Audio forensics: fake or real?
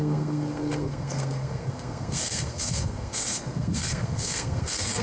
fake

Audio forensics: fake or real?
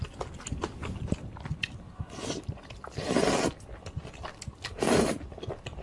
real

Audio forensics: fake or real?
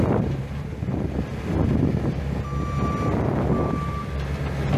real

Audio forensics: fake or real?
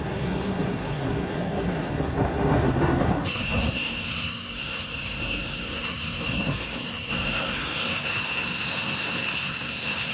fake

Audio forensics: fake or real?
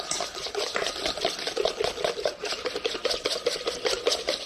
real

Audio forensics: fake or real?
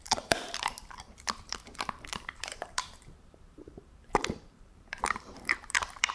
fake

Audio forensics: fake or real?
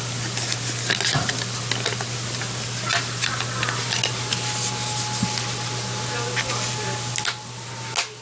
real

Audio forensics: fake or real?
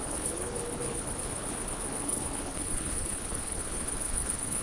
fake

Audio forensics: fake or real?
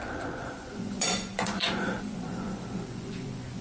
fake